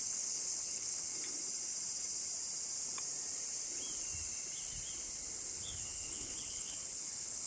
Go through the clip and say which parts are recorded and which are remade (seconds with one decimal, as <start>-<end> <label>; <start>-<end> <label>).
0.0-1.1 remade; 1.1-5.5 recorded; 5.5-7.5 remade